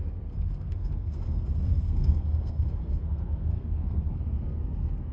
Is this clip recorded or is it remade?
remade